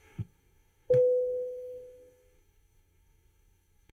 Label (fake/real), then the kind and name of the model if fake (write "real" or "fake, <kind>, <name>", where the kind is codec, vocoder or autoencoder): fake, codec, DAC